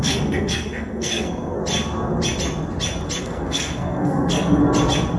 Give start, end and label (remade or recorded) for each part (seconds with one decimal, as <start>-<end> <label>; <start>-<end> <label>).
0.0-1.6 remade; 1.6-3.2 recorded; 3.2-4.6 remade; 4.6-5.2 recorded